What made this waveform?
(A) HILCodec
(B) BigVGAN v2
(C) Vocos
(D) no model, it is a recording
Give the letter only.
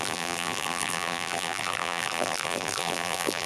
B